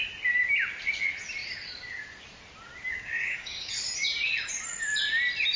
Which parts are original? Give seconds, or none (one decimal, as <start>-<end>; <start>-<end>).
0.0-2.9; 3.7-5.6